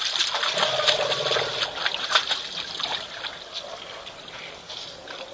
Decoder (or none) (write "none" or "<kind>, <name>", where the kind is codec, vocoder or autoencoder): none